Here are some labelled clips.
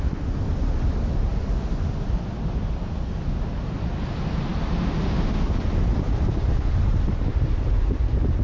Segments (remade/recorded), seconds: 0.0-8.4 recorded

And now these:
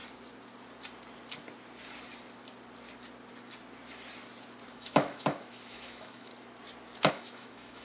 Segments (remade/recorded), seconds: 0.0-4.7 recorded; 4.7-6.3 remade; 6.3-7.1 recorded; 7.1-7.8 remade

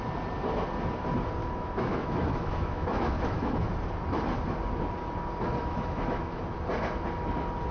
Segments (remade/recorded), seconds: 0.0-1.4 recorded; 1.4-3.7 remade; 3.7-5.6 recorded; 5.6-6.4 remade; 6.4-7.7 recorded

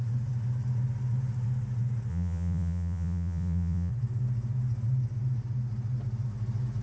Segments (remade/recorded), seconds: 0.0-2.1 recorded; 2.1-3.9 remade; 3.9-6.8 recorded

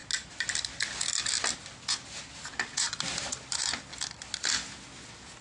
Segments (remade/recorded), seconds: 0.0-5.4 recorded

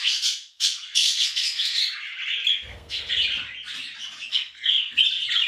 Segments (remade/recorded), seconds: 0.0-1.8 remade; 1.8-2.5 recorded; 2.5-3.1 remade; 3.1-4.3 recorded; 4.3-5.0 remade; 5.0-5.5 recorded

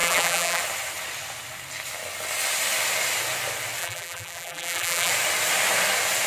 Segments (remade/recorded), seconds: 0.0-0.6 remade; 0.6-3.8 recorded; 3.8-5.1 remade; 5.1-6.3 recorded

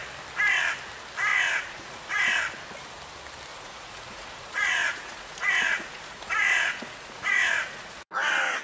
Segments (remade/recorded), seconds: 0.0-1.3 recorded; 1.3-2.4 remade; 2.4-3.5 recorded; 3.5-8.1 remade; 8.1-8.6 recorded